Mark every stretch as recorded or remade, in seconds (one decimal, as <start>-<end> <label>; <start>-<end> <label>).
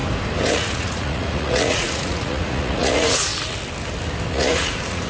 0.0-0.5 recorded; 0.5-3.3 remade; 3.3-4.3 recorded; 4.3-5.1 remade